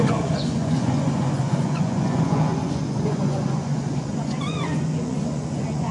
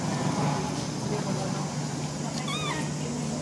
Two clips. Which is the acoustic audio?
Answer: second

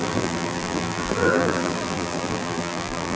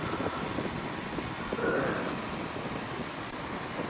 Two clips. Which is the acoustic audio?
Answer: second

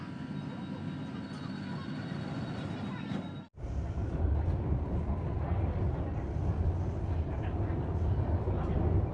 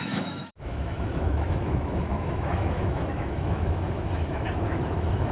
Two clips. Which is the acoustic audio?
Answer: first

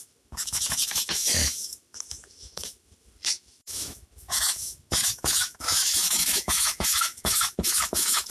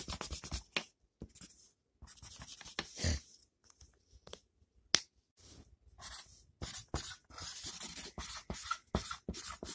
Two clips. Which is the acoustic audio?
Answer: second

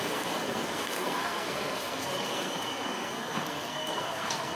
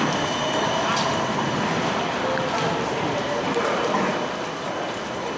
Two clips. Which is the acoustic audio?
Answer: second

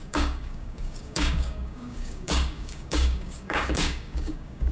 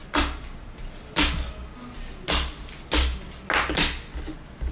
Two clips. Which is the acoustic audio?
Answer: second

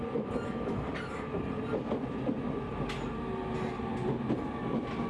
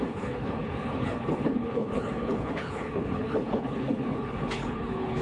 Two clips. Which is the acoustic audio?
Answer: first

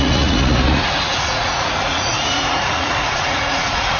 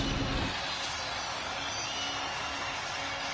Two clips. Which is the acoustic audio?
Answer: second